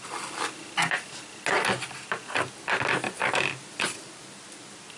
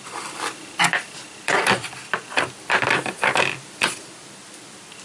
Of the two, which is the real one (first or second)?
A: first